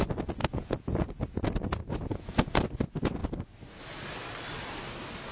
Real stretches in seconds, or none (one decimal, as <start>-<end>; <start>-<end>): 0.0-0.4; 1.4-1.8; 2.6-5.3